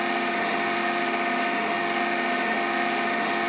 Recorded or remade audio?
remade